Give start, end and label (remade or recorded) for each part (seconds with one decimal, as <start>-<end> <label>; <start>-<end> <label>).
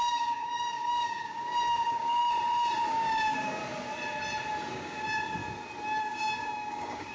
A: 0.0-2.2 remade; 2.2-2.9 recorded; 2.9-3.6 remade; 3.6-4.7 recorded; 4.7-5.4 remade; 5.4-6.0 recorded; 6.0-7.1 remade